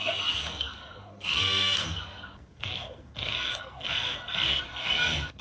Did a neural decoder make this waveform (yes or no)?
yes